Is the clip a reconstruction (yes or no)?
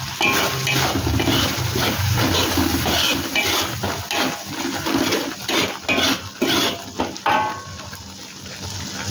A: no